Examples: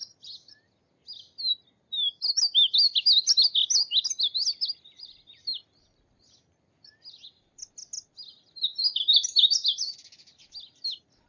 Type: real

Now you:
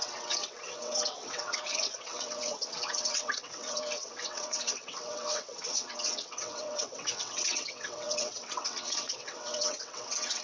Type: fake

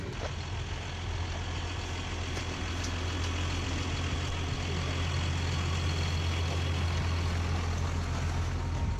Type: real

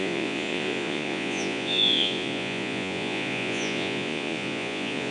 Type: fake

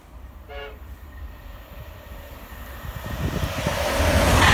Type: real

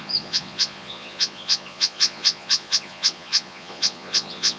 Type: fake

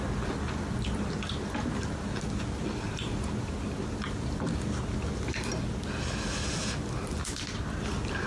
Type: real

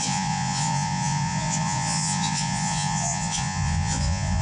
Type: fake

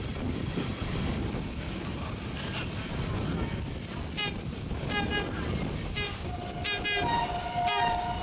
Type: real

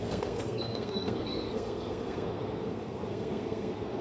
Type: fake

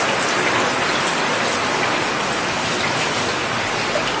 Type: real